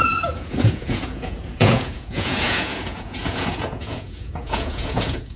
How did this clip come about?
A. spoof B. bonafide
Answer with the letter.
A